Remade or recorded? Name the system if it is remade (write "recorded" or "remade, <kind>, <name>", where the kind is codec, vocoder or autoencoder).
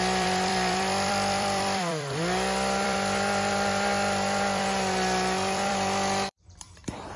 remade, vocoder, BigVGAN v2